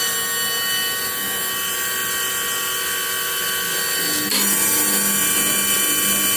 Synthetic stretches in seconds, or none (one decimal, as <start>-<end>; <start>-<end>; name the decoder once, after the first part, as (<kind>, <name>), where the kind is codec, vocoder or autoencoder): none